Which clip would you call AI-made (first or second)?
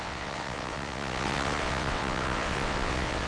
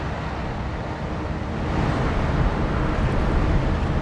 first